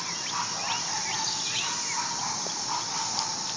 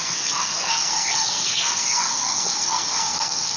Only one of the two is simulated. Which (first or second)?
second